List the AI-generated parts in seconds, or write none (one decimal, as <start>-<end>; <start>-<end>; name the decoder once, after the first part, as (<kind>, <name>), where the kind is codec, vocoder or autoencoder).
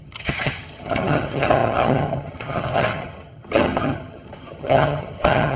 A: 0.0-5.6 (vocoder, HiFi-GAN)